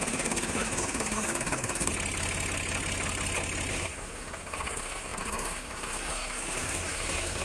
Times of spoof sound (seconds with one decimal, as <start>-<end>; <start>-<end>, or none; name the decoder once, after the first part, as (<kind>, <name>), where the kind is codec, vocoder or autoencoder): 0.0-1.9 (codec, SNAC); 3.7-7.4